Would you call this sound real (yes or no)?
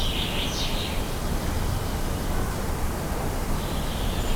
yes